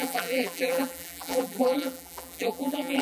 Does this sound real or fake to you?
fake